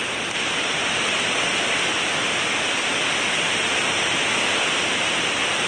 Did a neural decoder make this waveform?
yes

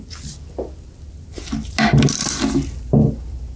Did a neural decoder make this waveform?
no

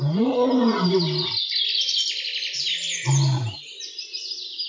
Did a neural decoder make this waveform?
no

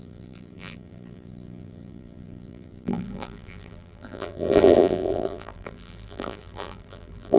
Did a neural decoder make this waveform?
yes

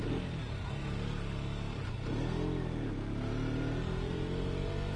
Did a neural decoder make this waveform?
no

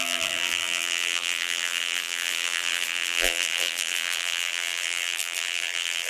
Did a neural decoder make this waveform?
yes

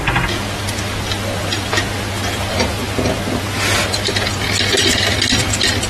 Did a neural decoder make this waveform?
no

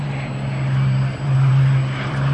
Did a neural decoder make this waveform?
yes